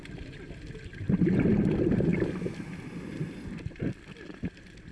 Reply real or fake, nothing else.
real